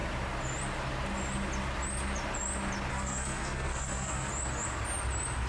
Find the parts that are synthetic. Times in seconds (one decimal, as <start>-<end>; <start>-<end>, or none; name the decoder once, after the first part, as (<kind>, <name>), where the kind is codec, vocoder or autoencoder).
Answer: 2.9-4.3 (codec, SNAC)